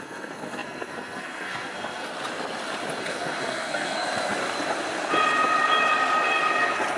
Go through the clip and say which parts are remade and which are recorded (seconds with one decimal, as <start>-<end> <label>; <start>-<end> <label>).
0.0-2.1 remade; 2.1-3.0 recorded; 3.0-4.1 remade; 4.1-7.0 recorded